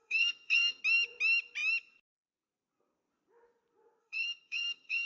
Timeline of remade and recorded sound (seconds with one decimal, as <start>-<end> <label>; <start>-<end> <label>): 0.0-0.8 remade; 0.8-4.0 recorded; 4.0-5.1 remade